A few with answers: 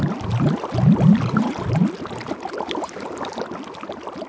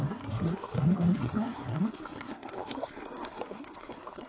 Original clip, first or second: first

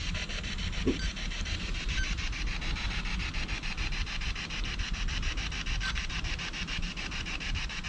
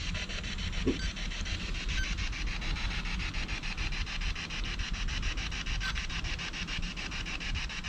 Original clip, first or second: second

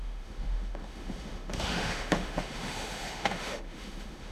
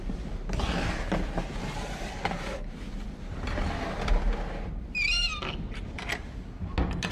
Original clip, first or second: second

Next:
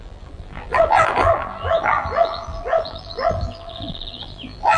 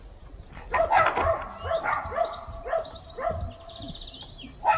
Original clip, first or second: second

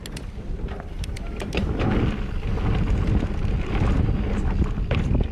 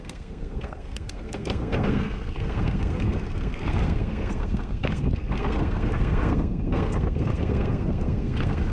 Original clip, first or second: first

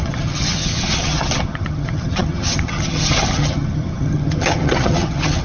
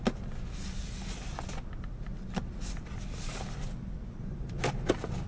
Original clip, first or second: second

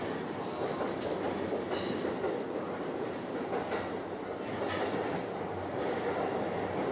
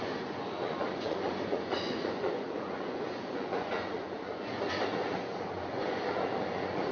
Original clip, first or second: first